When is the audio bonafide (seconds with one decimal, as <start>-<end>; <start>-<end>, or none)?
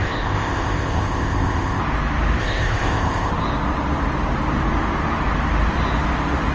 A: 1.8-2.4; 3.3-6.5